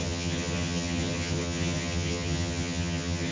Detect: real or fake fake